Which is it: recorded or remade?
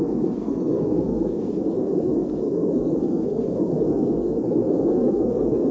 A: remade